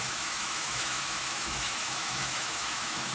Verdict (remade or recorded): remade